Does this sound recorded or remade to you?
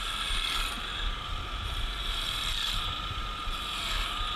remade